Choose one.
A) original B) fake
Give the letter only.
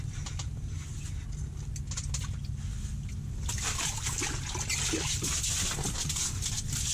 A